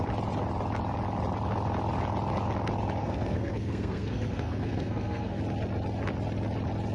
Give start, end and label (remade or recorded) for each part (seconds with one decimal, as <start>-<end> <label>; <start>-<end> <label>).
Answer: 0.0-3.0 recorded; 3.0-5.4 remade; 5.4-6.9 recorded